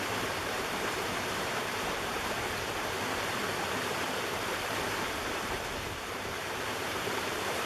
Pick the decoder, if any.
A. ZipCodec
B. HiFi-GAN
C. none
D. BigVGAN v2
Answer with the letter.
D